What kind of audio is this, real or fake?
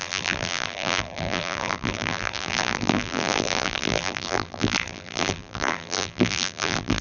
fake